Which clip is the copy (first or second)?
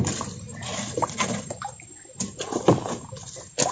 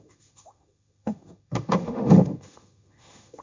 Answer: second